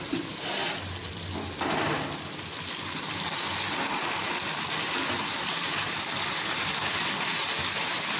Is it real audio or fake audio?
real